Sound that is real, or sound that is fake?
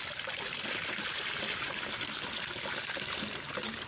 real